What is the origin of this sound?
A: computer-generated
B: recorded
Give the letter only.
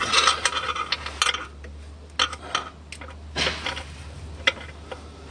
B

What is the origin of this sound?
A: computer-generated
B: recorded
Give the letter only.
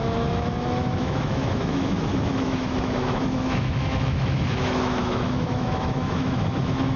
A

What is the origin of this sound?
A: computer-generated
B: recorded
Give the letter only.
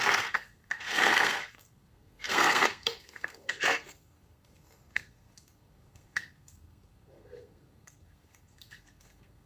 A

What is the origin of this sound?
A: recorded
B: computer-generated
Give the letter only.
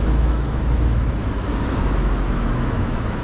B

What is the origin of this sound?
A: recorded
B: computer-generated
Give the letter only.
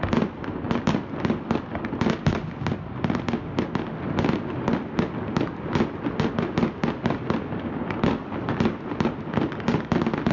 A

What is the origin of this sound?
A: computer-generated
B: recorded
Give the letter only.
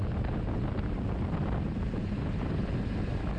B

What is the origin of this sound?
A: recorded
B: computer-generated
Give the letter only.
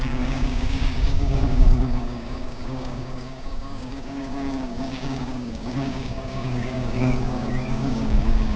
B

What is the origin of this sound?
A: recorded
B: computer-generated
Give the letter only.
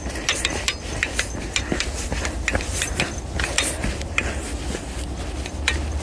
A